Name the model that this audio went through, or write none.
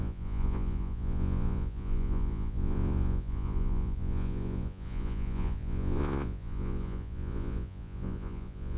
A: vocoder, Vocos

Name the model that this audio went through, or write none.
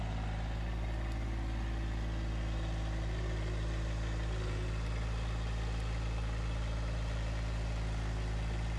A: none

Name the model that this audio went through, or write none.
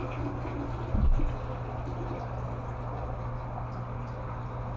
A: none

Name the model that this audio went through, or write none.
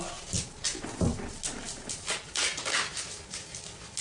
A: none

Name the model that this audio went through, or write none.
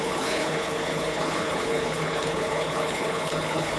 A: codec, HILCodec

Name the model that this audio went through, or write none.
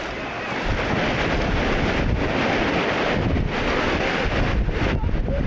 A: none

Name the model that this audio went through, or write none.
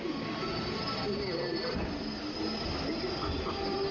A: none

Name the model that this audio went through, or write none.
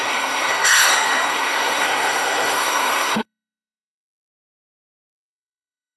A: codec, SNAC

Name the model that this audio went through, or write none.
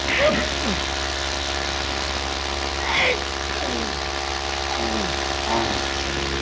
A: none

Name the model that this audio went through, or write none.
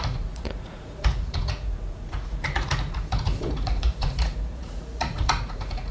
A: vocoder, Vocos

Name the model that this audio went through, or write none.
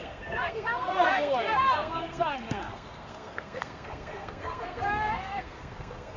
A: codec, SNAC